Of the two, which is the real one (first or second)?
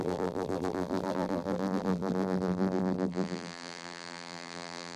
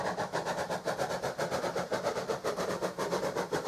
second